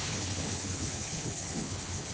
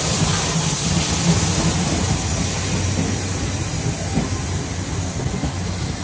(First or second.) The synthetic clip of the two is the first